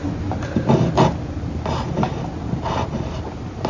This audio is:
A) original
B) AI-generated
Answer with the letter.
A